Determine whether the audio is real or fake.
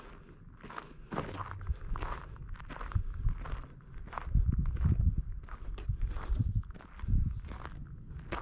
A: real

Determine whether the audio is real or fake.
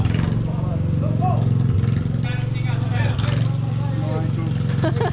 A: real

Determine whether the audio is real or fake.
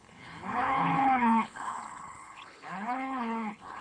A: fake